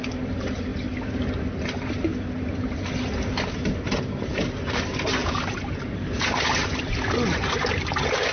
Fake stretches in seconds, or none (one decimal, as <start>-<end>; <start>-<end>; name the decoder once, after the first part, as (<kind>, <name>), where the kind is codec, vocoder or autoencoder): none